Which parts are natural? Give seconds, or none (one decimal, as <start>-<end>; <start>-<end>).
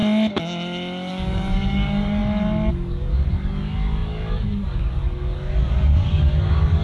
0.0-1.1; 2.2-2.7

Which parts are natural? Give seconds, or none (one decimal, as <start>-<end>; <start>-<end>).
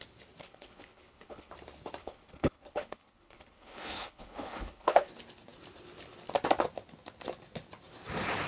0.0-0.4; 1.5-2.0; 5.1-8.5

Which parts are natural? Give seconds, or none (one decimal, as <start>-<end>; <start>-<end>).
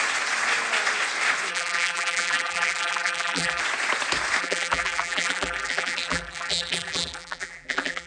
0.0-1.5; 3.6-4.4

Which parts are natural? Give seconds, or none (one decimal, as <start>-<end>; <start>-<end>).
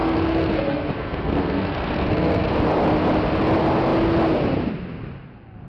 2.5-5.7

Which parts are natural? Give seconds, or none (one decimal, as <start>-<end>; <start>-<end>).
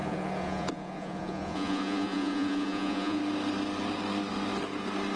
3.2-5.2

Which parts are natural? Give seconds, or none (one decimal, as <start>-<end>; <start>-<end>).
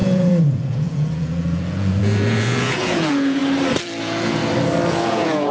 3.4-4.0; 4.4-4.9